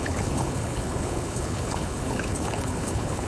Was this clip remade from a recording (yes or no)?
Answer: yes